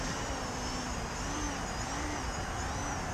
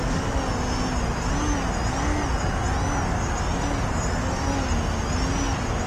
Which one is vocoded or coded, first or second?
first